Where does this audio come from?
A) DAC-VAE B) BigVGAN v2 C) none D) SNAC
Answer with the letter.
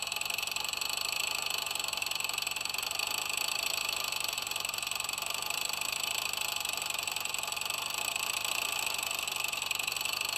C